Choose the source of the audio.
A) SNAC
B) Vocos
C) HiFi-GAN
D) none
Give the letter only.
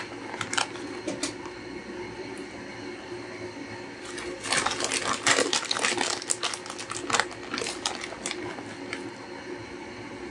D